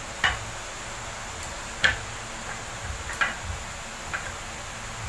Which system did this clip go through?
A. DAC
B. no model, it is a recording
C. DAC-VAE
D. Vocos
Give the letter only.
B